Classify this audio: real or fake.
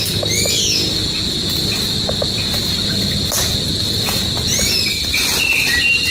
real